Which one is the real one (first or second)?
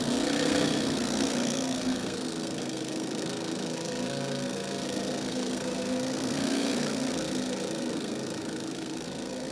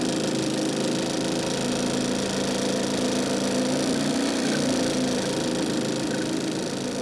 second